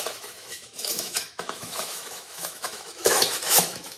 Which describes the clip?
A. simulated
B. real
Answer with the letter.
A